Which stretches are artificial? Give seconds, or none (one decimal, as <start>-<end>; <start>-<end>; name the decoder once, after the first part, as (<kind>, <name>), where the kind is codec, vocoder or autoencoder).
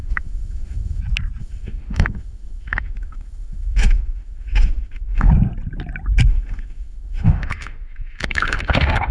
0.0-1.0 (autoencoder, DAC-VAE); 1.4-5.3; 6.3-9.1